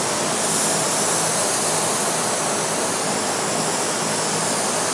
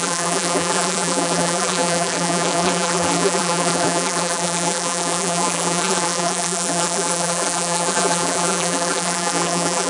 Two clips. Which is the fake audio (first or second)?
second